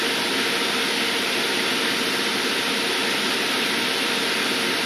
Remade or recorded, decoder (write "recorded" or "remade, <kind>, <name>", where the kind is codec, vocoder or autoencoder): recorded